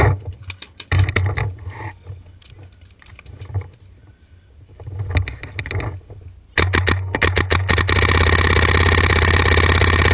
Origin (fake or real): real